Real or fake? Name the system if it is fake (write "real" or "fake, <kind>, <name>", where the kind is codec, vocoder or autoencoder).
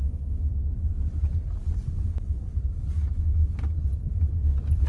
real